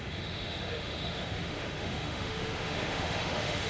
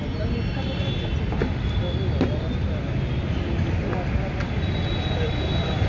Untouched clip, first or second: second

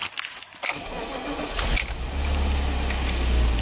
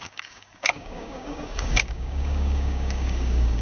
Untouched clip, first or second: first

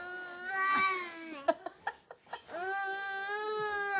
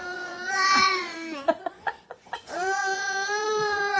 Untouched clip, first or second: first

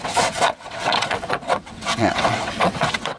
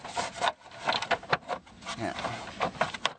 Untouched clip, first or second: second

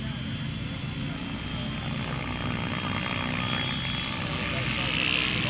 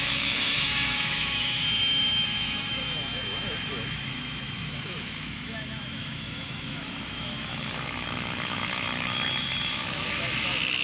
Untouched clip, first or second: first